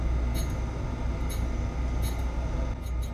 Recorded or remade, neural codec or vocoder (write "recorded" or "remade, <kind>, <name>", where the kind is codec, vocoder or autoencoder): recorded